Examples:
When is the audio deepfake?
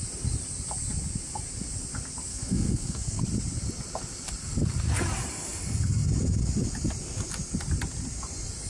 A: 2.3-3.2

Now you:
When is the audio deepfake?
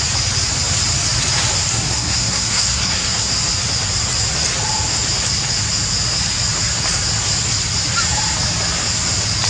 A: 1.7-3.3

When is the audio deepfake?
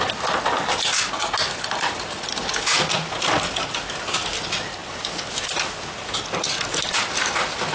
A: none